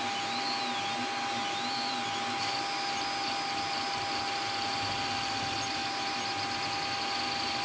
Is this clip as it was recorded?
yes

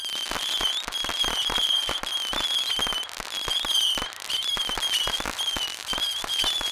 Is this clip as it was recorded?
yes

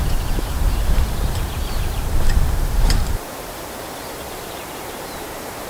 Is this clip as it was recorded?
no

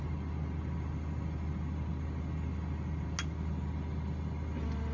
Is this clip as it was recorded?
yes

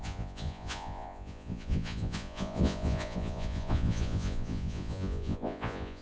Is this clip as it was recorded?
no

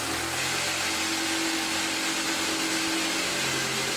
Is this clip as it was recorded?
yes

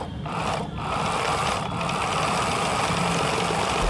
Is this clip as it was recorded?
yes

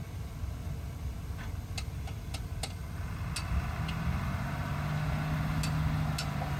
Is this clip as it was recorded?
yes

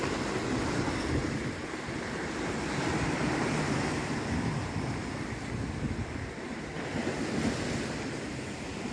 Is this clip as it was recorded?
yes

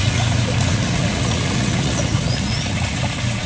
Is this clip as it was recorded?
no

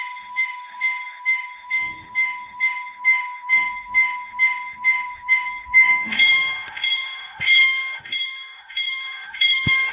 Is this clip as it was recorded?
no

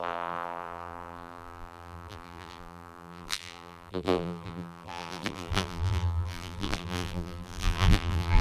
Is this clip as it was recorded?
no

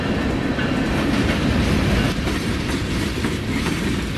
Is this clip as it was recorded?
yes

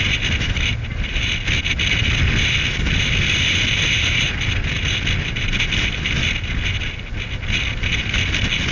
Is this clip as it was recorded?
yes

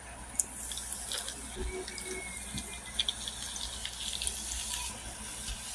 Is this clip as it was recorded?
yes